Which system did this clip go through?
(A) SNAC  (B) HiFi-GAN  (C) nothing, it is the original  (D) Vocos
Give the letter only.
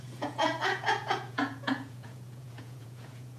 D